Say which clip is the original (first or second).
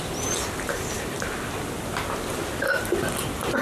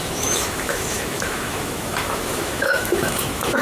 first